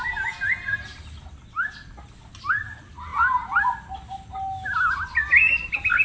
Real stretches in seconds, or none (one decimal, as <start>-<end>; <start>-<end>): 0.0-6.0

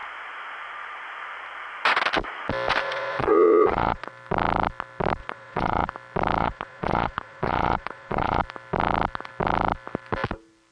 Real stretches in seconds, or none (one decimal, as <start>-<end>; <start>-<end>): 0.0-2.8; 4.1-5.2; 5.9-6.4; 8.4-10.7

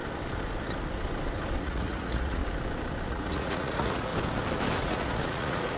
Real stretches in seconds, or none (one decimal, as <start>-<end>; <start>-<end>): 0.0-1.6; 2.4-3.1; 4.1-4.8